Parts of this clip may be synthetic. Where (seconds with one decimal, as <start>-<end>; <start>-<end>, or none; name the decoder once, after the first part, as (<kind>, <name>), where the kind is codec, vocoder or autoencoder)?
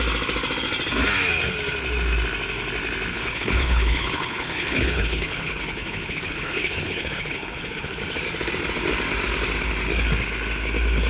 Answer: 3.1-8.0 (codec, HILCodec)